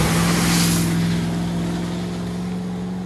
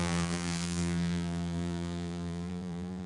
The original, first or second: first